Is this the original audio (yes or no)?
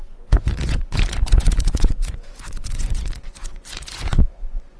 no